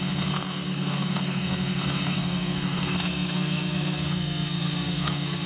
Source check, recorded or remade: remade